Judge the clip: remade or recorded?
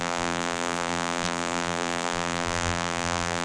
remade